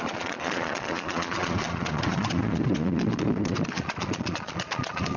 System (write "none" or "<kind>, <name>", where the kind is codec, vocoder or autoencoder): vocoder, Vocos